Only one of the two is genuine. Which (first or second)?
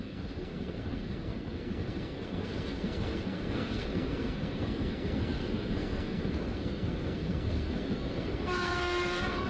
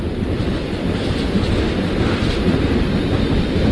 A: second